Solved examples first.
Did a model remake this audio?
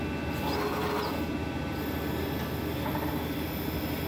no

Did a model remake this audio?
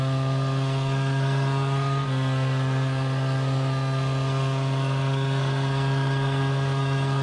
yes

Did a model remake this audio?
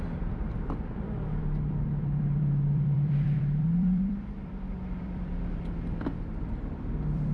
yes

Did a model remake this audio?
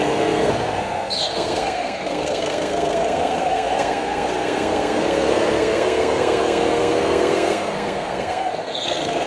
yes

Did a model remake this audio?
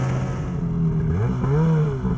no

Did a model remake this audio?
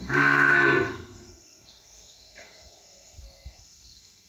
yes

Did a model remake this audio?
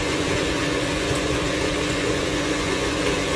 yes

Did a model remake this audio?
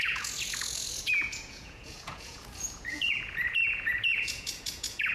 yes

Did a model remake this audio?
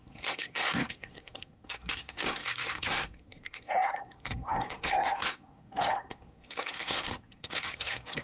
yes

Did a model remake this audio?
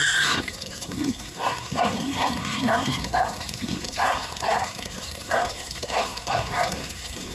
yes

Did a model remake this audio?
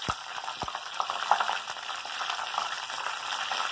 no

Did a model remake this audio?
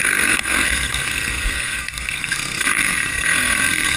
yes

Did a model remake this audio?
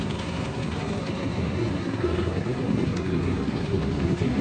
yes